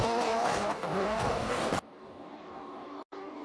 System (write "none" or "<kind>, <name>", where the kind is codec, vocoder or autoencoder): codec, DAC